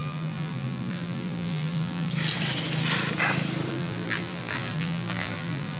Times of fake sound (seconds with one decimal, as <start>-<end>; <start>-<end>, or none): 0.0-2.1; 3.7-5.8